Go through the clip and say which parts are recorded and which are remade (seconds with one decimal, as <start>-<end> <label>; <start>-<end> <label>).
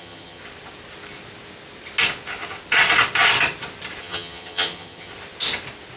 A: 0.0-0.4 remade; 0.4-4.0 recorded; 4.0-5.1 remade; 5.1-6.0 recorded